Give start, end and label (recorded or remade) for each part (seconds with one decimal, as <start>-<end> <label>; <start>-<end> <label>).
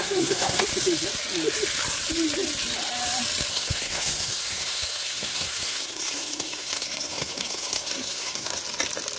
0.0-0.7 remade; 0.7-3.5 recorded; 3.5-8.6 remade; 8.6-9.2 recorded